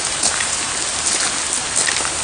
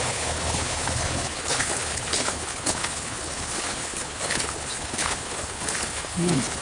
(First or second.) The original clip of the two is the first